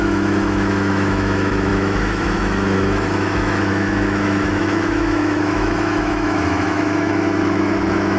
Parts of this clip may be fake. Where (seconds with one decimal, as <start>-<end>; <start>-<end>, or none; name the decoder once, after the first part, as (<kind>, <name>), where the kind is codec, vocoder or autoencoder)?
0.0-8.2 (autoencoder, DAC-VAE)